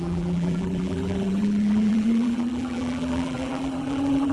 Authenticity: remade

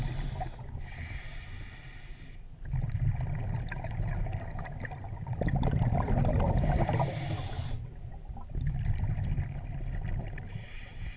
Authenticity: recorded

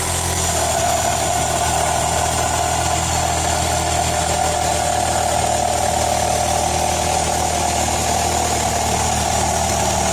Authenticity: recorded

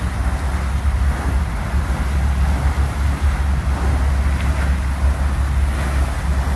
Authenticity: recorded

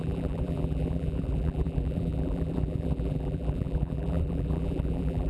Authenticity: remade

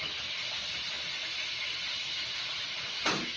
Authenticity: recorded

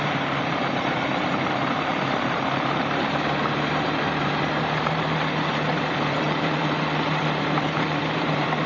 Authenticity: remade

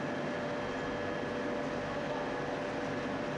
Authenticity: recorded